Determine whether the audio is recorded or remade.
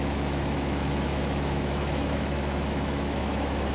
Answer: remade